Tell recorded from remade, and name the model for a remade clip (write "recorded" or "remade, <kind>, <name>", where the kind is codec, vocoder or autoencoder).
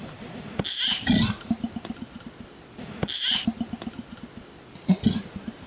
recorded